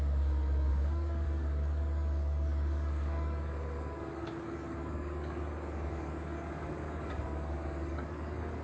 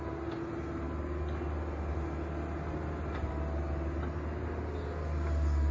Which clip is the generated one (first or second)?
first